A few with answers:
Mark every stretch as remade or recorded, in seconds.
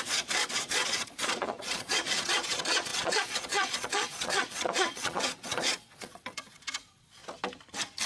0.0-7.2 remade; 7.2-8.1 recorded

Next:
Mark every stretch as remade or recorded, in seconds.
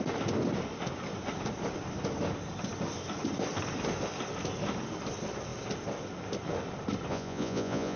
0.0-7.1 recorded; 7.1-8.0 remade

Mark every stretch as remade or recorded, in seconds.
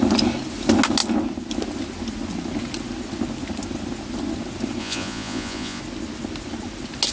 0.0-4.8 recorded; 4.8-5.8 remade; 5.8-7.1 recorded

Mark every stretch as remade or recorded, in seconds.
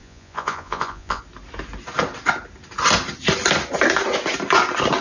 0.0-1.2 remade; 1.2-5.0 recorded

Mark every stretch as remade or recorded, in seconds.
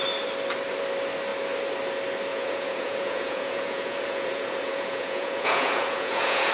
0.0-2.3 recorded; 2.3-6.5 remade